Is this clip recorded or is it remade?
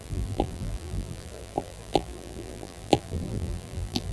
remade